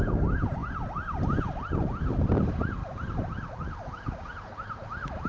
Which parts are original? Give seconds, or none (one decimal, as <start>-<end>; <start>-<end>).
0.0-5.3